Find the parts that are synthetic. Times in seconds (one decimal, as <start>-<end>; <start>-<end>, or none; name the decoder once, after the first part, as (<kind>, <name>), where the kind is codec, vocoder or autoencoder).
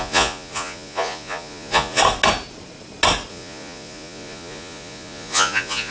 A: 0.0-2.0 (vocoder, Vocos); 3.3-5.9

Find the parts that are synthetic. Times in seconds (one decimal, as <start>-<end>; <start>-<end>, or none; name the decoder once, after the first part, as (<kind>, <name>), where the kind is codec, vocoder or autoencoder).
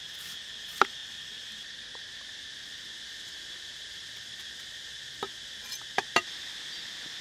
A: none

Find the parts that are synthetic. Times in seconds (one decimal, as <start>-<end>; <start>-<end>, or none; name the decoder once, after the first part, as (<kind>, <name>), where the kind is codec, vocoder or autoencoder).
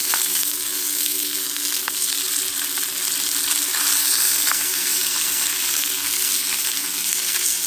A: 0.0-2.2 (codec, SNAC); 4.0-7.7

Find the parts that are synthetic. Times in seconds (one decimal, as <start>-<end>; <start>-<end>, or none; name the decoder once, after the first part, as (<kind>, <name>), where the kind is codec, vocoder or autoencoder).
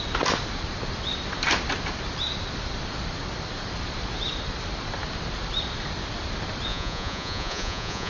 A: 6.7-8.1 (vocoder, Vocos)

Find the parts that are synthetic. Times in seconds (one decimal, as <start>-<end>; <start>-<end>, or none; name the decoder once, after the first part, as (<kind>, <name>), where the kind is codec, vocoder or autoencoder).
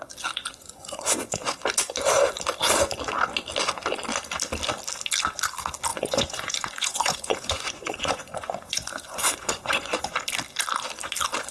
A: 0.5-1.6 (vocoder, Vocos); 5.9-10.2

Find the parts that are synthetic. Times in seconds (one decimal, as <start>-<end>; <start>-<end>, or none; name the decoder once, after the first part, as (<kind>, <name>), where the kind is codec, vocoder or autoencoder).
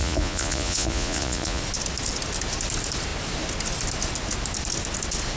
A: 0.0-1.6 (vocoder, Vocos)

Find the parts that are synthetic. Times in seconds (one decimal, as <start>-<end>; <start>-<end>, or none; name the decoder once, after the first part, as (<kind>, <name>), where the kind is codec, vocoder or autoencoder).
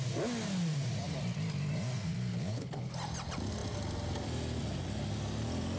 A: 2.3-2.9 (codec, HILCodec)